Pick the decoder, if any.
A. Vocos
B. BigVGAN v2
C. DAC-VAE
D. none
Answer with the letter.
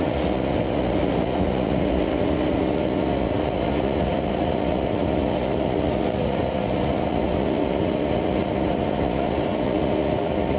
A